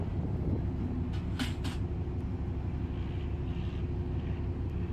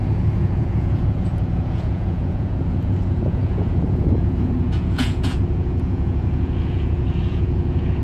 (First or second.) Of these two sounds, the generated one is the second